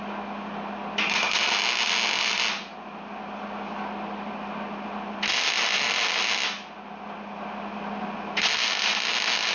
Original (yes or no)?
yes